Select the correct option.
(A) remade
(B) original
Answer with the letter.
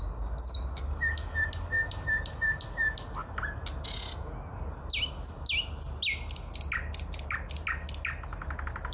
B